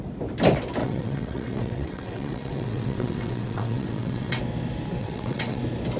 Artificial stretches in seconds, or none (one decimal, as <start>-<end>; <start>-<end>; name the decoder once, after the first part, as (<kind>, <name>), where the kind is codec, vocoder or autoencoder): 0.8-4.4 (vocoder, WaveNeXt); 5.0-5.6